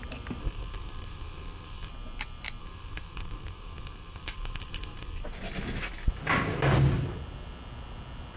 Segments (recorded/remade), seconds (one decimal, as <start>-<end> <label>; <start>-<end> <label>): 0.0-0.4 recorded; 0.4-1.9 remade; 1.9-2.6 recorded; 2.6-5.2 remade; 5.2-8.4 recorded